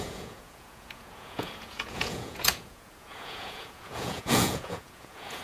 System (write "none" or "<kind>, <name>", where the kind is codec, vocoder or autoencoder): vocoder, Vocos